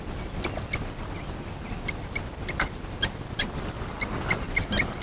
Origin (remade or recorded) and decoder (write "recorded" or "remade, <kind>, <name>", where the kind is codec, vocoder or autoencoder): recorded